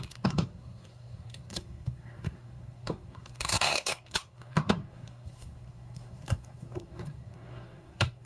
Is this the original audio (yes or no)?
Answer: no